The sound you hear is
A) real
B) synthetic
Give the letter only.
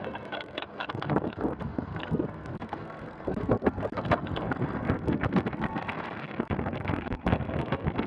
B